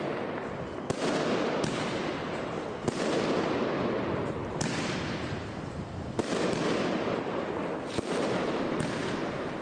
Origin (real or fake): real